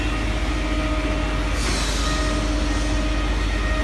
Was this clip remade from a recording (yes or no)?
no